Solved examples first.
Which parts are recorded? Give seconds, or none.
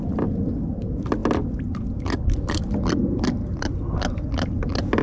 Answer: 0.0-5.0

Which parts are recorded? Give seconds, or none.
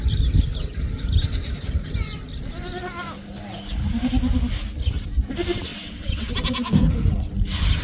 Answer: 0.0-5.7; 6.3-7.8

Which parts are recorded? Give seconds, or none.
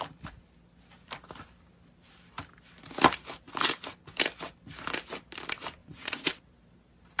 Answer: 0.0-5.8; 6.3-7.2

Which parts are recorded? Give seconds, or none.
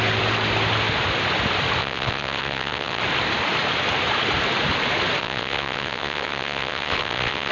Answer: 0.0-1.8; 3.0-5.2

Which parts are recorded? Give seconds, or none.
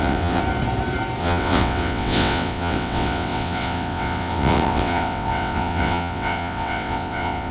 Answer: 0.4-1.2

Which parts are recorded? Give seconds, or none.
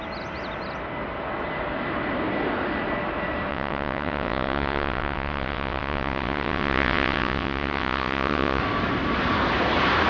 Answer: 0.0-3.5; 8.6-10.1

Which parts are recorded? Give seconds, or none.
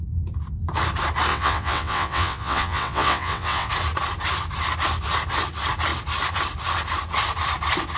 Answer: 0.0-1.3; 3.7-8.0